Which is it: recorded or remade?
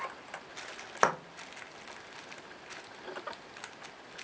recorded